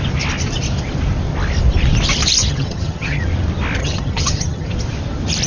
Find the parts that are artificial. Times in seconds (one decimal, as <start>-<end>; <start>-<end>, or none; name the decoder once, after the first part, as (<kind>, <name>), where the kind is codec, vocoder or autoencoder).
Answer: 2.4-3.2 (vocoder, HiFi-GAN); 3.8-4.7